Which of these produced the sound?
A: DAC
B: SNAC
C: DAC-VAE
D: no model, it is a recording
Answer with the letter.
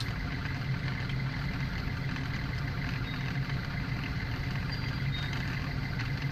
D